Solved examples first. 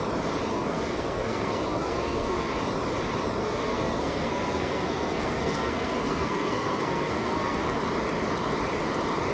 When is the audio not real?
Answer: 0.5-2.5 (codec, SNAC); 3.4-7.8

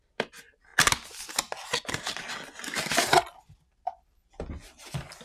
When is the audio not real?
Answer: none

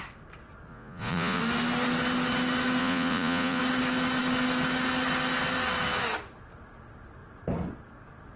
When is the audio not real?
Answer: 0.7-1.4 (vocoder, Vocos); 2.8-3.6